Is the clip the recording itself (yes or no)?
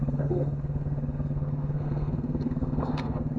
no